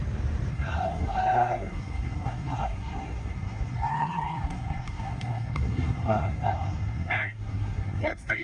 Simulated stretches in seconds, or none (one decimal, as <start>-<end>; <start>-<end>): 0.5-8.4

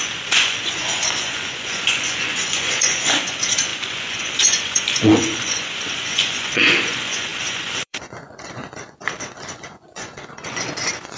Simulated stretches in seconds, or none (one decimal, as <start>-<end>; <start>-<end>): 0.0-11.2

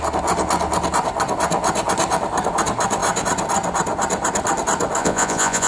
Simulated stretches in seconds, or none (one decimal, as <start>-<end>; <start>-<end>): 5.0-5.7